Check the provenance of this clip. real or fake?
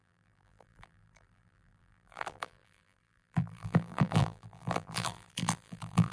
fake